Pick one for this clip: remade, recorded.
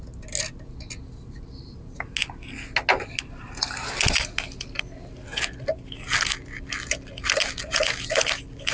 recorded